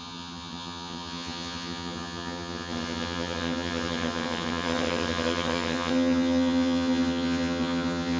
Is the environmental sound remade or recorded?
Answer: remade